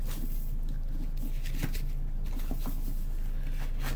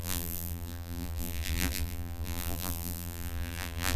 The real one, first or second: first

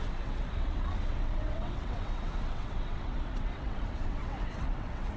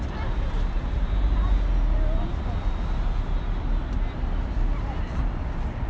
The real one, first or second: second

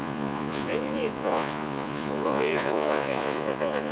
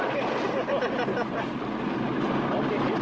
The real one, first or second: second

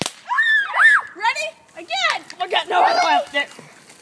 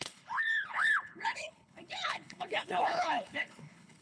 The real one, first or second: first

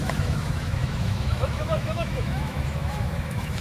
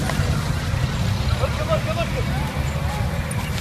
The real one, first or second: second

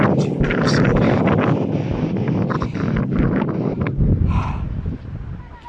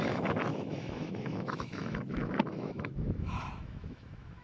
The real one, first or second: first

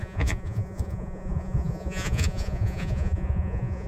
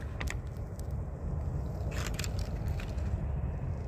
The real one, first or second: second